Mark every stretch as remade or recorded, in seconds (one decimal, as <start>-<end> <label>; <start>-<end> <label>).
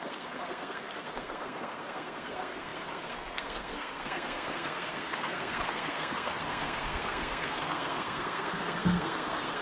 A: 0.0-9.6 remade